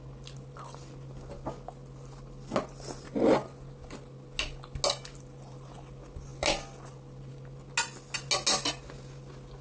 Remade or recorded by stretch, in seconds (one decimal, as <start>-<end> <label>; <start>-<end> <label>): 0.0-9.6 recorded